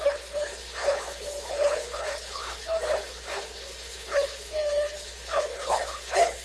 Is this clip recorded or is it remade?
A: remade